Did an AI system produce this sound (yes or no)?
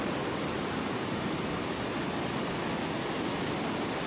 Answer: no